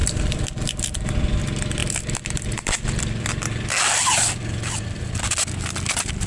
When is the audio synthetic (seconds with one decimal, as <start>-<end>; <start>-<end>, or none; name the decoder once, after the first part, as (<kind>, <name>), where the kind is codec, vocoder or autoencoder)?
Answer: 0.0-1.4 (vocoder, BigVGAN v2); 1.8-4.8